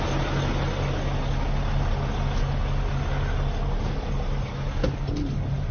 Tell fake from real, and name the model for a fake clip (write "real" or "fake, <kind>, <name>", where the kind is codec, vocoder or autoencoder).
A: real